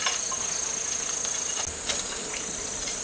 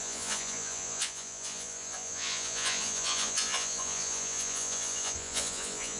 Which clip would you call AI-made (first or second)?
second